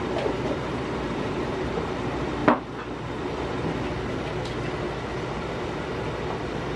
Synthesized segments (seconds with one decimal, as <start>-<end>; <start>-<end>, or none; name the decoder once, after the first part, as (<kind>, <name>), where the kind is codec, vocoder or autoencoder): 0.0-2.4 (vocoder, BigVGAN v2)